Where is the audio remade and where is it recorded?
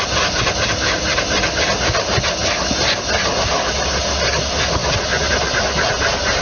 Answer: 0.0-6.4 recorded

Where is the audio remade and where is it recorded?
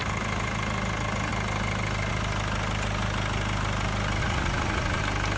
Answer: 0.0-4.2 recorded; 4.2-5.0 remade; 5.0-5.4 recorded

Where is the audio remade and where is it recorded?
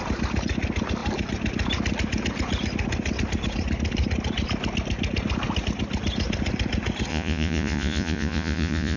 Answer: 0.0-7.1 recorded; 7.1-9.0 remade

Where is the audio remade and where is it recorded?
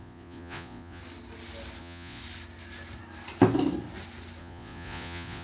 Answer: 0.0-1.0 remade; 1.0-1.8 recorded; 1.8-2.2 remade; 2.2-4.4 recorded; 4.4-5.4 remade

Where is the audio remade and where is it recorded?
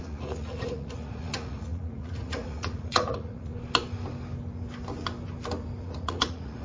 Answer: 0.0-3.5 remade; 3.5-5.8 recorded; 5.8-6.6 remade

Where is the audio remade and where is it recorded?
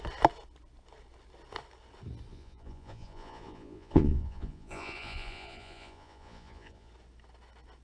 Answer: 0.0-2.3 recorded; 2.3-6.9 remade; 6.9-7.8 recorded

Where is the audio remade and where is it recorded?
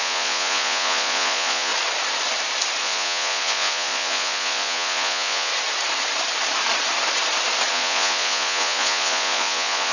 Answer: 0.0-1.7 remade; 1.7-2.8 recorded; 2.8-5.5 remade; 5.5-7.7 recorded; 7.7-9.9 remade